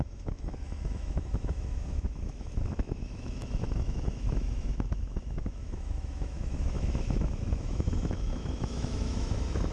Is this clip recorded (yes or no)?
no